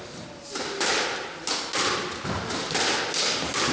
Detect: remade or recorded recorded